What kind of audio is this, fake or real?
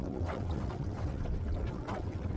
fake